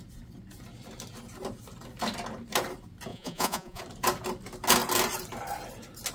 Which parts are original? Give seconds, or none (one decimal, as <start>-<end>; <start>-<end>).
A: 0.0-3.1; 3.8-6.1

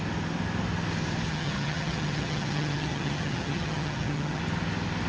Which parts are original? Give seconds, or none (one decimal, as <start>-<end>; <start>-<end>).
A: 0.0-1.3; 4.4-5.1